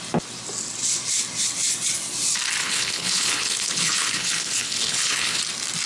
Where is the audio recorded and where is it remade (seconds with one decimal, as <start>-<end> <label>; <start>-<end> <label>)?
0.0-2.6 recorded; 2.6-5.4 remade; 5.4-5.9 recorded